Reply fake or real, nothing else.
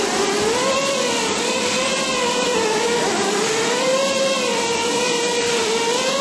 real